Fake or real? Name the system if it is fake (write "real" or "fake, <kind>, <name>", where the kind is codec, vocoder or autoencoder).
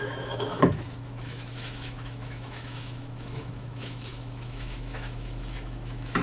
fake, autoencoder, DAC-VAE